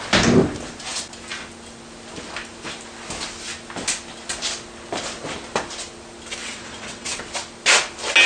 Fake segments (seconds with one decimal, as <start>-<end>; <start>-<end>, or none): 6.4-7.2